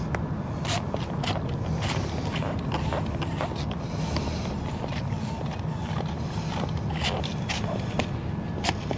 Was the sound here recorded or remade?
recorded